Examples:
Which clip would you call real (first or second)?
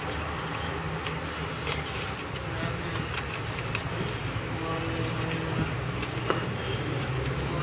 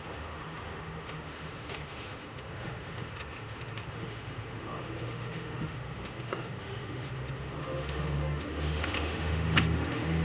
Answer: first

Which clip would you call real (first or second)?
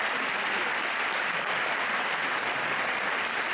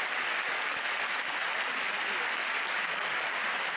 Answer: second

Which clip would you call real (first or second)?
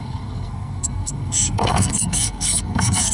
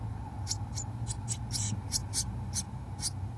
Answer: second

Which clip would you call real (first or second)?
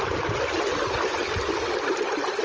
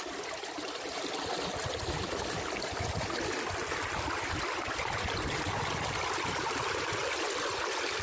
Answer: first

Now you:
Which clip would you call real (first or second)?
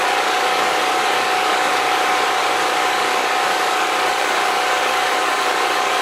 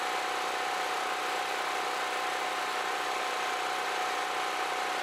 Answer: second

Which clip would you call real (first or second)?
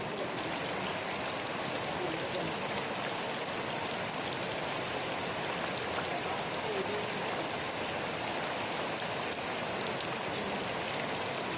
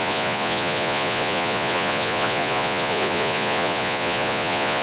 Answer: first